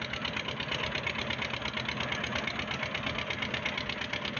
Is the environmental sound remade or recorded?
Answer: recorded